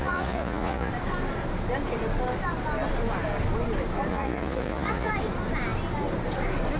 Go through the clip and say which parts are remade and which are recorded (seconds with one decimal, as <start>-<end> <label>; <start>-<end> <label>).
0.0-0.9 remade; 0.9-4.1 recorded; 4.1-5.1 remade; 5.1-6.8 recorded